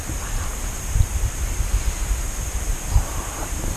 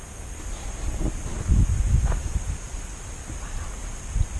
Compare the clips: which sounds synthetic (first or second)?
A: first